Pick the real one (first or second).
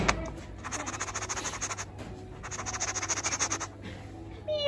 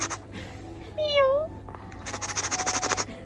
first